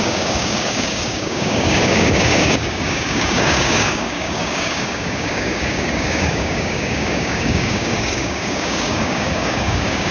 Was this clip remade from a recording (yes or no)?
yes